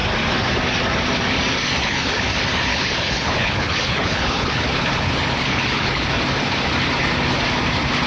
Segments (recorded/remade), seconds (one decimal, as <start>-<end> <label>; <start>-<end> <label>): 0.0-1.8 recorded; 1.8-2.3 remade; 2.3-2.7 recorded; 2.7-6.2 remade; 6.2-8.1 recorded